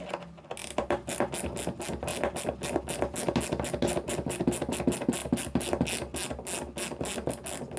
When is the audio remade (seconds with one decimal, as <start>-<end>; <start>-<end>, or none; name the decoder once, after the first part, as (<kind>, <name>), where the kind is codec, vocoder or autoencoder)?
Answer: 0.6-1.2 (vocoder, BigVGAN v2)